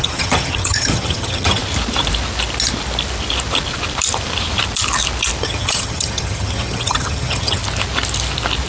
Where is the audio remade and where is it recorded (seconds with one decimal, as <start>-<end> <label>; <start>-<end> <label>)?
0.0-1.6 remade; 1.6-5.4 recorded; 5.4-7.6 remade; 7.6-8.7 recorded